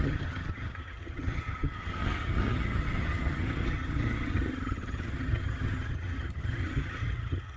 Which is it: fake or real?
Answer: fake